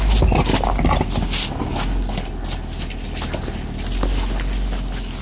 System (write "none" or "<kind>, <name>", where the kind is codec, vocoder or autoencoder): none